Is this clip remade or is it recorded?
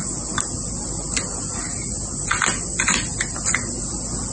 recorded